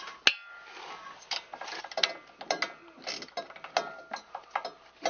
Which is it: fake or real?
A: real